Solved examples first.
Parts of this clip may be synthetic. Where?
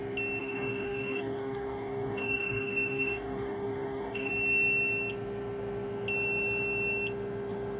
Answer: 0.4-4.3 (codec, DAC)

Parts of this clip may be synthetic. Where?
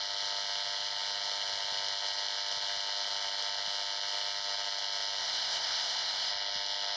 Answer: 5.2-6.3 (codec, ZipCodec)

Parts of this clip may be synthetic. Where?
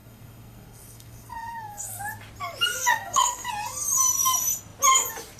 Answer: 0.0-2.0 (codec, SNAC); 2.7-3.5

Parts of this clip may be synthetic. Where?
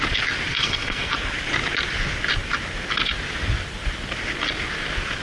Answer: 0.5-1.1 (codec, SNAC)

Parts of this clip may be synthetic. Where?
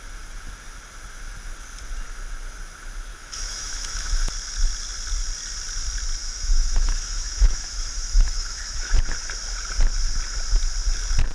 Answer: 3.1-4.3 (autoencoder, DAC-VAE); 6.2-8.9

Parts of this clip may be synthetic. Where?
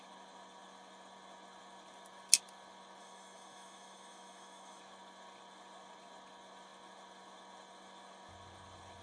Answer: 3.0-4.8 (autoencoder, DAC-VAE)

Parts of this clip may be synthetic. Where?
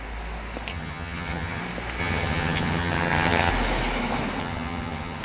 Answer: 0.7-1.6 (vocoder, HiFi-GAN); 2.0-3.5; 4.4-5.2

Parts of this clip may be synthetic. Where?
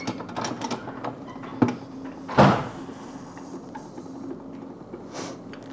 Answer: none